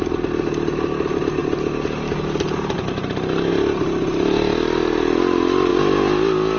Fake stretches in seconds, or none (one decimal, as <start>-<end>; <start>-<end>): none

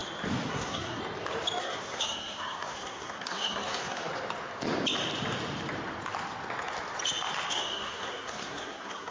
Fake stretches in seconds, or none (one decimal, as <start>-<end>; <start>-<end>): 0.5-1.0; 1.6-4.1; 7.5-9.1